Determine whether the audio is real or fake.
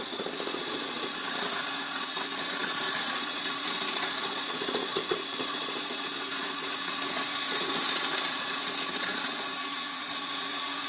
fake